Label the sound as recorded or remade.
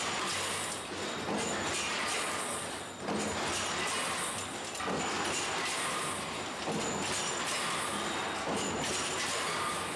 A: recorded